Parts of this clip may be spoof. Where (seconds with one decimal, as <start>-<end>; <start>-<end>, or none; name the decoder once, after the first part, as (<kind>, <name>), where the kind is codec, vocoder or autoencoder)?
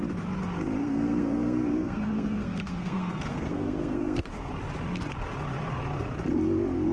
0.8-4.5 (codec, SNAC)